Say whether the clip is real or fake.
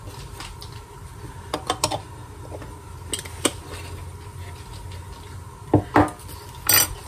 real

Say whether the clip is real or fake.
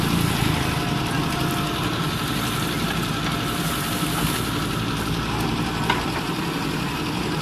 real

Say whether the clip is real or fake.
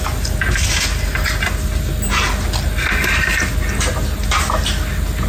real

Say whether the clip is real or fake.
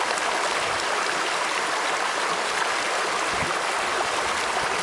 real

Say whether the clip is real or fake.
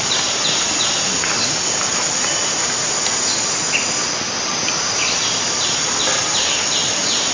real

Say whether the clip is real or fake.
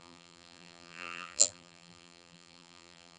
fake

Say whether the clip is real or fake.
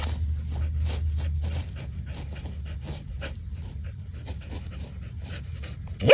real